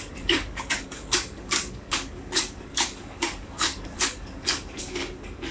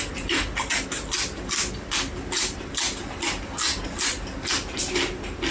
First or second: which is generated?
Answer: first